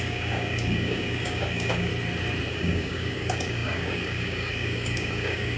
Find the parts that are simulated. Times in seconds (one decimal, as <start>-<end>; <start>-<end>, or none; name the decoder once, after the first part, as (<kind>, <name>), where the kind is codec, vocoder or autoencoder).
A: 0.0-1.9 (codec, DAC); 2.5-5.6